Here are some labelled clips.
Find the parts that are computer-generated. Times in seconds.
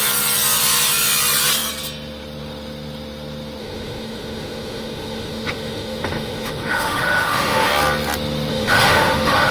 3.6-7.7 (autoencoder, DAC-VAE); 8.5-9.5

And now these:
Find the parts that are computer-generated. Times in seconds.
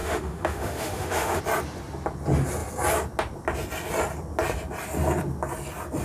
0.0-1.4 (autoencoder, DAC-VAE)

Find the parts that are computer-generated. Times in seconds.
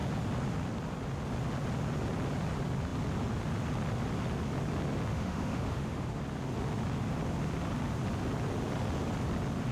5.1-6.2 (autoencoder, DAC-VAE)